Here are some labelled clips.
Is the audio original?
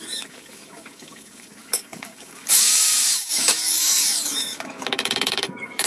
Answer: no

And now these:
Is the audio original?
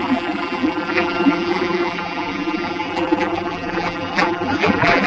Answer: no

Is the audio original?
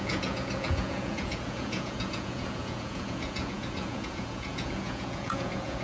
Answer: no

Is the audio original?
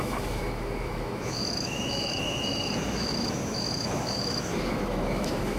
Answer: no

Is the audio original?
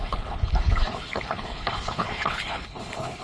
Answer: no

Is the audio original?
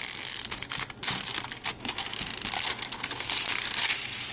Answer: yes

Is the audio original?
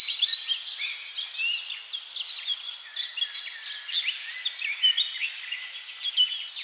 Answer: yes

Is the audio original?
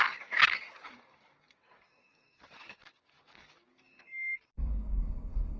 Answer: no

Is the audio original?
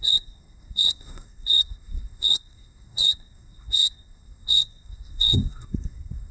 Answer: no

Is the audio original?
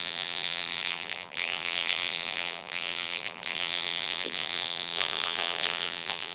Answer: no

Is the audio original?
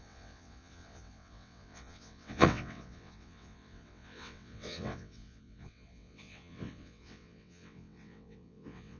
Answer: no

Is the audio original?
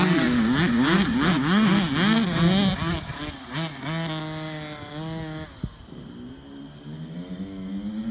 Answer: yes